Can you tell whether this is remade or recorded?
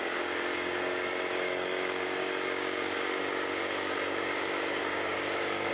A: remade